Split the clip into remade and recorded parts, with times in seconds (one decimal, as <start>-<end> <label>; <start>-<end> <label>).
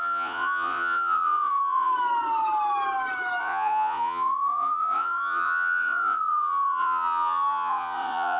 0.0-1.9 remade; 1.9-3.4 recorded; 3.4-8.4 remade